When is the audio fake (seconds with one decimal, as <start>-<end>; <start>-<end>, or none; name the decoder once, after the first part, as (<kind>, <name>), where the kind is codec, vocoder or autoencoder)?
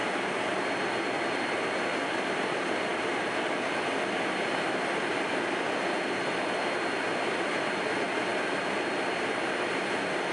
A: none